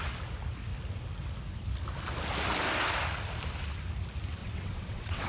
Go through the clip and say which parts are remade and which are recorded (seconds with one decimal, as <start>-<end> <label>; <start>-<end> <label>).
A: 0.0-4.4 recorded; 4.4-5.3 remade